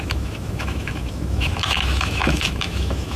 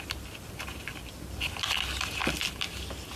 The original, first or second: second